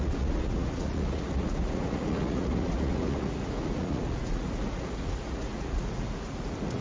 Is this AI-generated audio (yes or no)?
yes